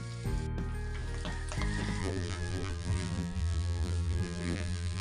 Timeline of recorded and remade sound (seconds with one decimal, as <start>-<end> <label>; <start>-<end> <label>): 0.0-2.0 recorded; 2.0-5.0 remade